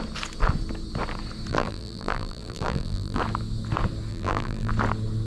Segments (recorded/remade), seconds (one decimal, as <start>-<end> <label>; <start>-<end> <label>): 0.0-1.5 recorded; 1.5-3.2 remade; 3.2-4.1 recorded; 4.1-4.7 remade; 4.7-5.3 recorded